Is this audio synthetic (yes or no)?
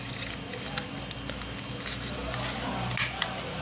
no